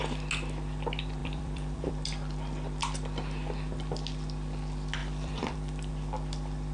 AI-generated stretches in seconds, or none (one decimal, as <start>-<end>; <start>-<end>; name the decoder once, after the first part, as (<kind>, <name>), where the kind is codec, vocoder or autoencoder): 1.2-1.9 (vocoder, BigVGAN v2); 5.0-5.9